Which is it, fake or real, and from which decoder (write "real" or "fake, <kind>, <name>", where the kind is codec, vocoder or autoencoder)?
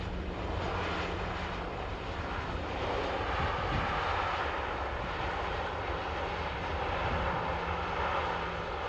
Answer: real